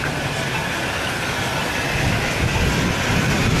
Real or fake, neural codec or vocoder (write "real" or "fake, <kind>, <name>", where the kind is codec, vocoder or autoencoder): real